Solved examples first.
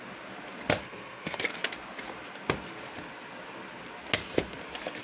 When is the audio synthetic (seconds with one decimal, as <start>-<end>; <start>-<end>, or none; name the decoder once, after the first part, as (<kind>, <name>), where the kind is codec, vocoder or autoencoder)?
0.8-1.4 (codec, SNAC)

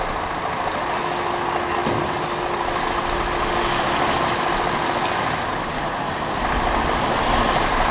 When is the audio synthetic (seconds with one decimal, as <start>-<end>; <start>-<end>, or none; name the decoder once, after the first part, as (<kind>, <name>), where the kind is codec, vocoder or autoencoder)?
none

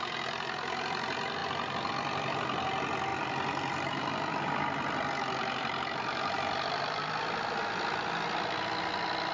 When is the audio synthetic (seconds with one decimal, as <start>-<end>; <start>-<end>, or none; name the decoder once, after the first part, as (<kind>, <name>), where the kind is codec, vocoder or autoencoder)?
3.1-7.2 (vocoder, BigVGAN v2)

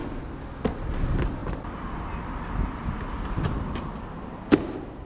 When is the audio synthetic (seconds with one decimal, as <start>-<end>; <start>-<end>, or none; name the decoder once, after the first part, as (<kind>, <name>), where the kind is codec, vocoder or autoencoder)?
none